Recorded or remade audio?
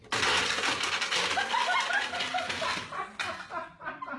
recorded